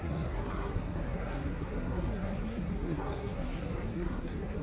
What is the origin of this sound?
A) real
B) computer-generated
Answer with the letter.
B